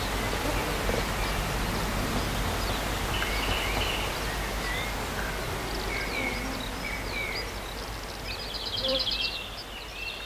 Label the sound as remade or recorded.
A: recorded